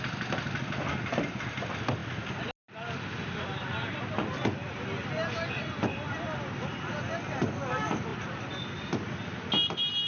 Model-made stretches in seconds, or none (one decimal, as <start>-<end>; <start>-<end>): none